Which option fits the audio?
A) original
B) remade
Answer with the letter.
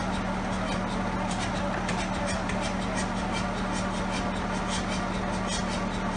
A